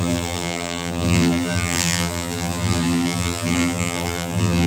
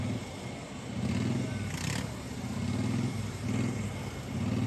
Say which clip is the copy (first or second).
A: first